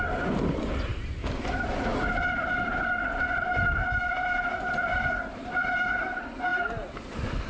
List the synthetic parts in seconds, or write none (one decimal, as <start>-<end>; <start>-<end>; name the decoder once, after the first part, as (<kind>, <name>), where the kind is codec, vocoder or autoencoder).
none